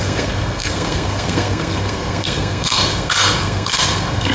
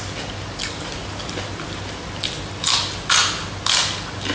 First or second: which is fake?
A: first